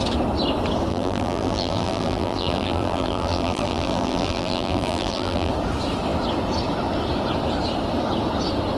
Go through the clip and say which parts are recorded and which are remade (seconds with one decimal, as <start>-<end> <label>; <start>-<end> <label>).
0.0-0.9 recorded; 0.9-5.5 remade; 5.5-8.8 recorded